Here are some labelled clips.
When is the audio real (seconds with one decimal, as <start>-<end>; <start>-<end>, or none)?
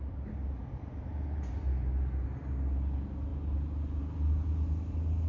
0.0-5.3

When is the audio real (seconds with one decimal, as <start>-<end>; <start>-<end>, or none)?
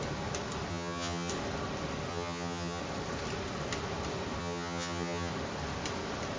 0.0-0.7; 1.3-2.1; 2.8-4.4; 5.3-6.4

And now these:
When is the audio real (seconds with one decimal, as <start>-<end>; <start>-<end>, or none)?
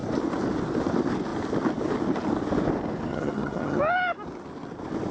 0.0-3.1; 3.8-5.1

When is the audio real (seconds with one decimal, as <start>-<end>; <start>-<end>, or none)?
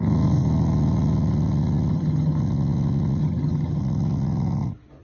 0.0-1.9; 2.4-3.2; 3.8-5.0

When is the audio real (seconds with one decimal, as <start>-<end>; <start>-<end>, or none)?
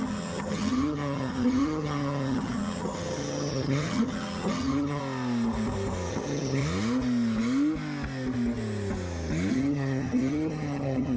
5.0-6.1; 6.6-9.5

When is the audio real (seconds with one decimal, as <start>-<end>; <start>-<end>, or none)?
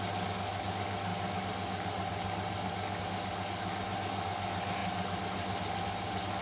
0.0-6.4